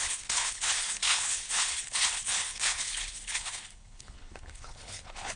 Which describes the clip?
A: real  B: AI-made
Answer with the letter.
B